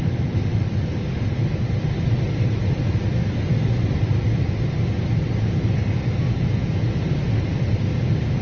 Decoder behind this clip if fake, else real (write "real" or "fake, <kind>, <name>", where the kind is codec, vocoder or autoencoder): real